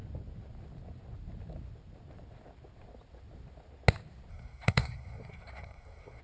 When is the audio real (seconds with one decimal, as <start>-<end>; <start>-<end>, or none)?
0.0-4.3